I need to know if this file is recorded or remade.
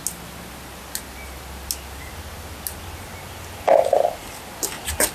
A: recorded